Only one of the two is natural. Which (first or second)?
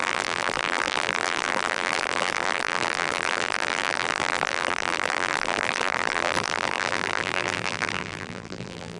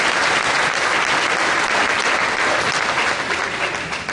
second